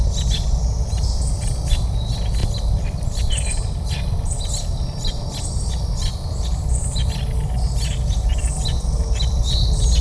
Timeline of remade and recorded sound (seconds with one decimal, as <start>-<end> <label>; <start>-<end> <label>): 0.0-10.0 recorded